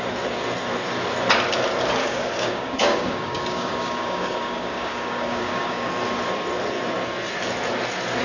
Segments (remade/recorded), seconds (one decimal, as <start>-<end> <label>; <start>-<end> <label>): 0.0-2.0 recorded; 2.0-5.9 remade; 5.9-8.2 recorded